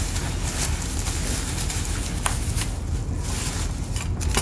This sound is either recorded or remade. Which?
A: recorded